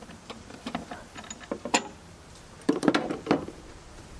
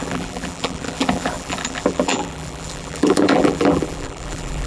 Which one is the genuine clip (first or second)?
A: first